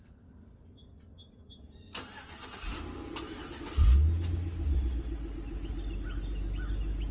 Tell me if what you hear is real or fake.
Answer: real